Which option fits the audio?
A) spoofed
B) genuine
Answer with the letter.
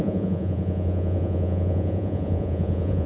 A